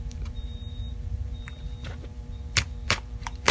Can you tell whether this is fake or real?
fake